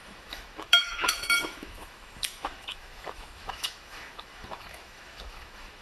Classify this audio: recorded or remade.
remade